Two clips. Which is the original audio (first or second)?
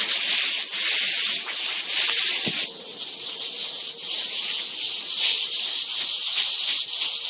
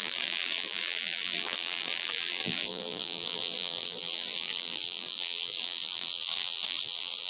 first